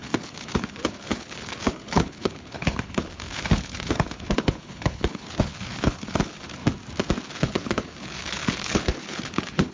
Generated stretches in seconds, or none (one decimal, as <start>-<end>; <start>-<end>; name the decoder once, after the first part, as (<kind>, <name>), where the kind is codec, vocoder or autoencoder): 0.0-6.6 (codec, HILCodec); 7.3-9.7